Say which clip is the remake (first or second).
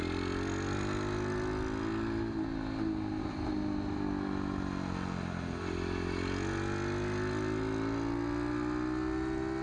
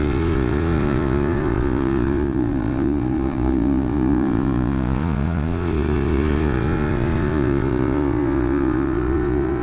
second